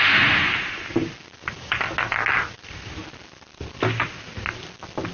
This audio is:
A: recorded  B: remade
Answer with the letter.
A